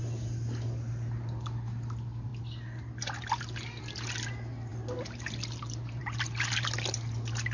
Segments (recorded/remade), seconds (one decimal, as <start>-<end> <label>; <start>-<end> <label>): 0.0-7.5 recorded